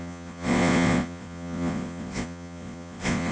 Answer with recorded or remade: remade